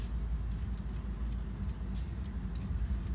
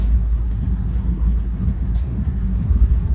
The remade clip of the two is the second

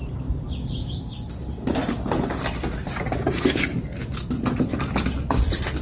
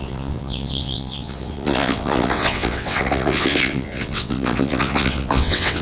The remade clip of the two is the second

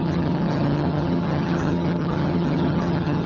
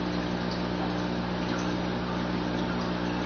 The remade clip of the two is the first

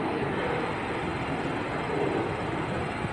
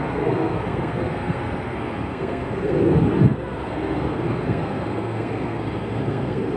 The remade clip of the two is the second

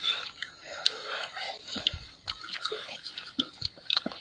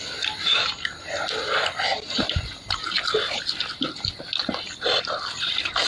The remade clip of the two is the first